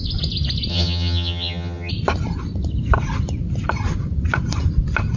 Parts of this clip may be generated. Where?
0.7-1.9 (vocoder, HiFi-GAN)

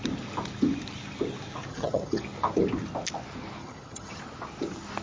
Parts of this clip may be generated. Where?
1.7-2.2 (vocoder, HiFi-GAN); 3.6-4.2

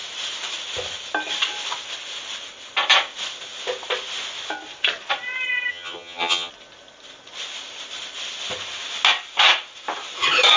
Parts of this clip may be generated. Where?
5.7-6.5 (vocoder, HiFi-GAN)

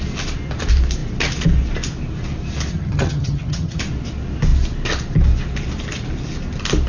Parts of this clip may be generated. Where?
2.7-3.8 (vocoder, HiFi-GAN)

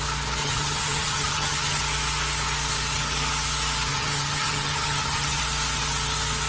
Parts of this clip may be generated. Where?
0.4-1.8 (vocoder, HiFi-GAN); 3.9-5.4

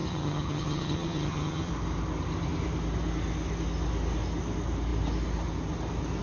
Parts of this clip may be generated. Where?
0.0-1.7 (vocoder, HiFi-GAN)

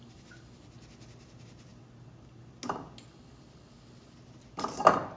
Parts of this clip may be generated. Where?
none

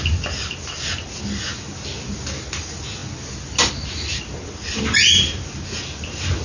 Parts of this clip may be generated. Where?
none